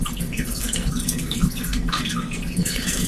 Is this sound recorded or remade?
remade